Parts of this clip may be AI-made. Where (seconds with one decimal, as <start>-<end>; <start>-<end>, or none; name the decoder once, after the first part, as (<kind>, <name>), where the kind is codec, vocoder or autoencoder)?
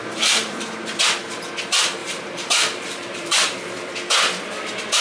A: 0.0-1.0 (vocoder, BigVGAN v2); 2.0-3.9